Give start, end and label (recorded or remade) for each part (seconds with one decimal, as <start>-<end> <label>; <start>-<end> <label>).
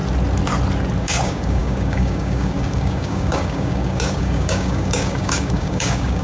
0.0-1.0 recorded; 1.0-6.2 remade